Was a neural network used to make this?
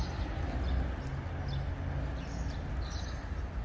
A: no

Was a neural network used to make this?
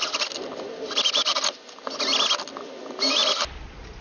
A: no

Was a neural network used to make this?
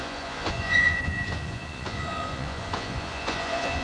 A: yes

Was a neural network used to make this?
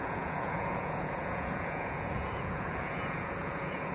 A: yes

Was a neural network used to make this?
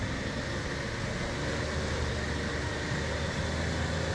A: no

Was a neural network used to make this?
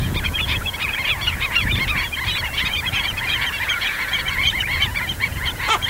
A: yes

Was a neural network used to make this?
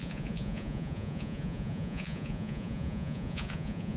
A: yes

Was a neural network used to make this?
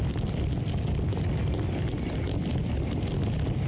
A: no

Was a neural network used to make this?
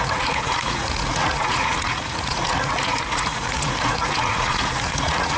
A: yes